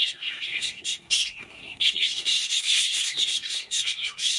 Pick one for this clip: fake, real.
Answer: fake